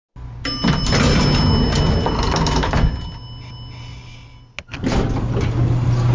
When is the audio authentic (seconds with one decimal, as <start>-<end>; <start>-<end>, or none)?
0.0-6.1